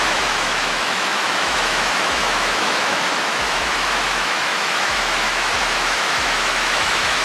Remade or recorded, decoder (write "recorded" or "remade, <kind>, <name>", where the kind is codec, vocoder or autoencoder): remade, autoencoder, DAC-VAE